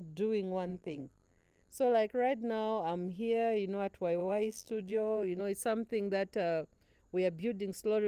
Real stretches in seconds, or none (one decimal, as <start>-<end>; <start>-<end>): 0.0-0.7; 1.7-4.2; 5.4-8.1